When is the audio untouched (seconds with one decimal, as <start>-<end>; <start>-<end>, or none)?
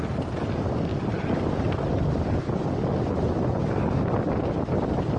0.0-5.2